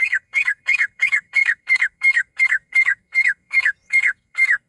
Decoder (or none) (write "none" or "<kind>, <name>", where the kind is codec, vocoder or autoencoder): codec, SNAC